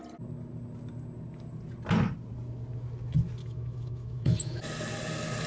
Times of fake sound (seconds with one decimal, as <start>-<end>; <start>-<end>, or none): 3.4-4.6